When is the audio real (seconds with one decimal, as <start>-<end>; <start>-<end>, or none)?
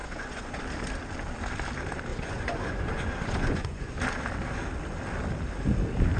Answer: 0.6-2.1; 3.9-6.2